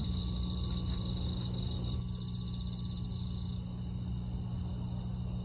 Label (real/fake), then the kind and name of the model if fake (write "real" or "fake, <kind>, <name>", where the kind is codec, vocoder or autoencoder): real